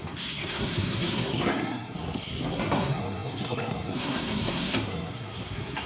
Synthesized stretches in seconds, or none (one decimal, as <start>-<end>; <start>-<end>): 0.0-5.9